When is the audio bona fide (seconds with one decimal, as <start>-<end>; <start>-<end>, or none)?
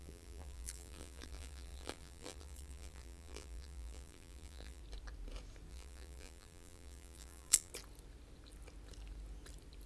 4.8-5.7; 7.7-9.9